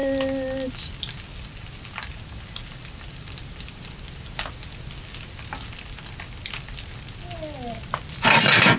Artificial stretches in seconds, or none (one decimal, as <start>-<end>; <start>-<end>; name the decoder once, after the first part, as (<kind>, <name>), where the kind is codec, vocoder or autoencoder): none